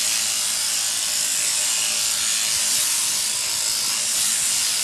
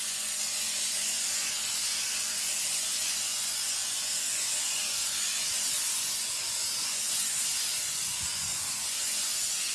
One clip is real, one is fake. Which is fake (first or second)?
second